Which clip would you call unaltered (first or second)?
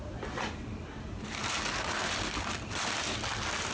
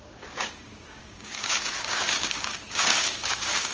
first